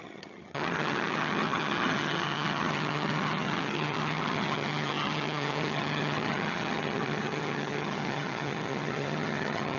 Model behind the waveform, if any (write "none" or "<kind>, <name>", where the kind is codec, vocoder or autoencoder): vocoder, HiFi-GAN